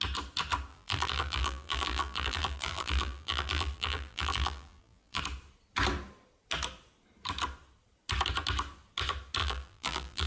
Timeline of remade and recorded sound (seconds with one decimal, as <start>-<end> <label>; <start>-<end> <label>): 0.0-0.7 recorded; 0.7-5.2 remade; 5.2-9.4 recorded; 9.4-10.3 remade